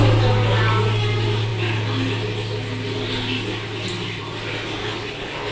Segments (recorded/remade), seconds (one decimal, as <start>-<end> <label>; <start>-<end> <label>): 0.0-4.8 recorded; 4.8-5.5 remade